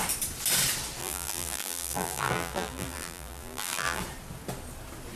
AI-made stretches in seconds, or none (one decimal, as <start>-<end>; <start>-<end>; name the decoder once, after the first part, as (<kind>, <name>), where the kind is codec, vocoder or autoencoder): 1.0-4.0 (vocoder, BigVGAN v2)

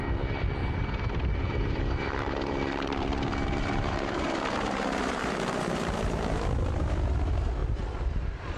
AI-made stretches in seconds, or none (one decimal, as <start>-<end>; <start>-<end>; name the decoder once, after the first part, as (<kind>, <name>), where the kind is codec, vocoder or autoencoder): 0.6-5.6 (vocoder, BigVGAN v2)

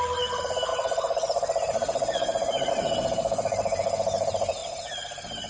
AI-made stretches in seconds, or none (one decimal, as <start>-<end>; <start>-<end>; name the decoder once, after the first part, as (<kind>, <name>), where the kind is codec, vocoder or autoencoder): 0.7-2.7 (vocoder, BigVGAN v2); 4.6-5.5

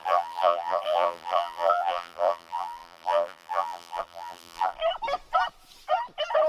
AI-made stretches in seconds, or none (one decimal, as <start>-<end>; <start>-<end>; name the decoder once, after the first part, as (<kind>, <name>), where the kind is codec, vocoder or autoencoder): 0.0-4.8 (vocoder, BigVGAN v2)

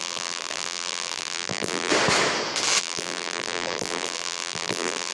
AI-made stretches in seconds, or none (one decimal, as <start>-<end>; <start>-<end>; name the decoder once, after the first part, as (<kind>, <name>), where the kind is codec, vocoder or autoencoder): 0.0-1.9 (vocoder, BigVGAN v2); 2.8-5.1

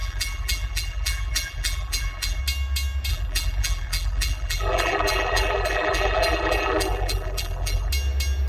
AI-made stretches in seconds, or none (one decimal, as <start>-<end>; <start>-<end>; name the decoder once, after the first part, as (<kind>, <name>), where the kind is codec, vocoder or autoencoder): 0.0-2.4 (vocoder, BigVGAN v2); 3.1-7.9

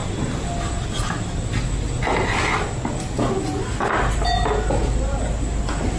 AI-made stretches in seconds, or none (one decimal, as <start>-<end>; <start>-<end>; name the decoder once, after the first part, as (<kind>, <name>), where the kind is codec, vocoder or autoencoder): none

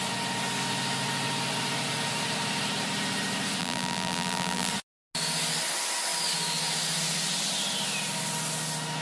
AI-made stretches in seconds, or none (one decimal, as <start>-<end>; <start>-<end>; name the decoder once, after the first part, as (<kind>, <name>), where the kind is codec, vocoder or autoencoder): 3.6-4.7 (vocoder, BigVGAN v2)